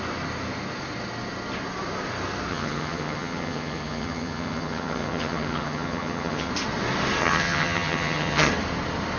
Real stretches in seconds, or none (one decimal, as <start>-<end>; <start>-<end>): 0.0-2.5; 6.5-7.2; 8.5-9.2